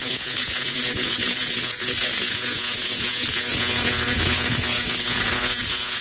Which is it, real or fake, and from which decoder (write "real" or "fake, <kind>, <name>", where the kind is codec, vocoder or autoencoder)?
fake, vocoder, Vocos